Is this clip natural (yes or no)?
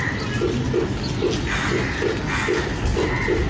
yes